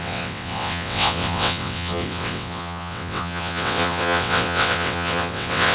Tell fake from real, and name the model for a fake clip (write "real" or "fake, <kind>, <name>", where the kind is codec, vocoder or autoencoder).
fake, vocoder, WaveNeXt